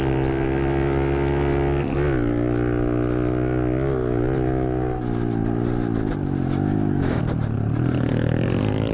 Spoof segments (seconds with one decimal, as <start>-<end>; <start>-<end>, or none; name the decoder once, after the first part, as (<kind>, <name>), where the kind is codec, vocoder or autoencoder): 6.7-7.2 (autoencoder, DAC-VAE)